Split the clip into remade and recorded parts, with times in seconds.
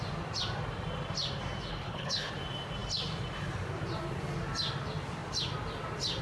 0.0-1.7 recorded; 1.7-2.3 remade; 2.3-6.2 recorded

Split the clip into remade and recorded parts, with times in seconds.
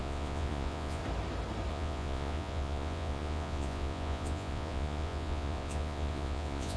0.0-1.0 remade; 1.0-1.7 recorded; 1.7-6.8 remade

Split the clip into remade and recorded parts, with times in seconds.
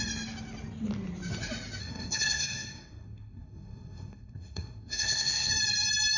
0.0-1.8 recorded; 1.8-5.5 remade; 5.5-6.2 recorded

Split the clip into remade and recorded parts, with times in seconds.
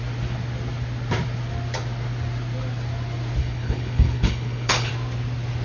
0.0-3.4 recorded; 3.4-4.9 remade; 4.9-5.6 recorded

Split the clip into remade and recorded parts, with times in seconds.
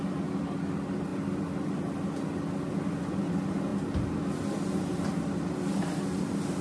0.0-6.6 recorded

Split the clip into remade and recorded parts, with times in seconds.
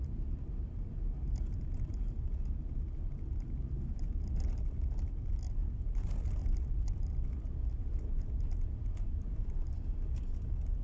0.0-10.8 recorded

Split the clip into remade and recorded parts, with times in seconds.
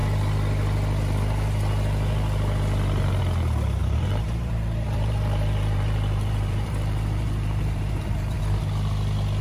0.0-3.8 recorded; 3.8-8.4 remade; 8.4-9.4 recorded